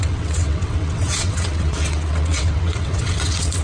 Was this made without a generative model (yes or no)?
no